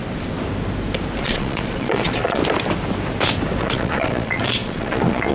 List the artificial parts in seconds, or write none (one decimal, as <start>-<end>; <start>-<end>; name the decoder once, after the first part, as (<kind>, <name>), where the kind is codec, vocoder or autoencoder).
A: 1.2-2.4 (vocoder, Vocos); 3.6-5.3